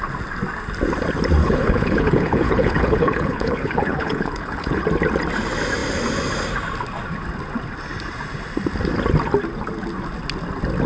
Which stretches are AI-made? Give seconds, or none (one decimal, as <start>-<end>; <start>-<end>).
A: 1.4-4.8